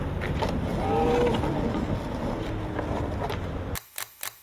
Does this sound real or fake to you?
real